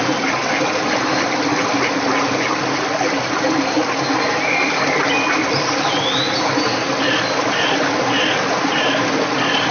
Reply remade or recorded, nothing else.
recorded